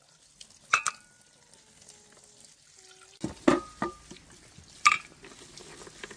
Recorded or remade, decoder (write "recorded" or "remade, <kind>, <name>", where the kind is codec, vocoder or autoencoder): recorded